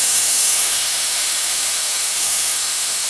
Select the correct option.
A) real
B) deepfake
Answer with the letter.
B